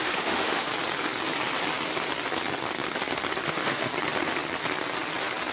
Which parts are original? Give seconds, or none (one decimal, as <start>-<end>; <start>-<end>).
0.7-3.4; 3.9-5.5